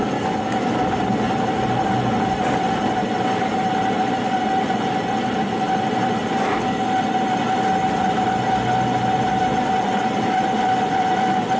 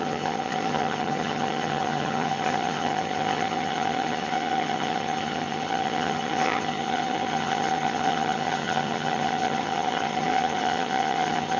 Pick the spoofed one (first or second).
second